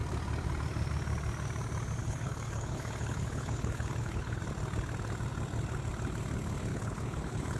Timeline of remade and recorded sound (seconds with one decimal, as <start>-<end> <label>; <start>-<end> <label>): 0.0-2.0 recorded; 2.0-4.4 remade; 4.4-6.7 recorded; 6.7-7.6 remade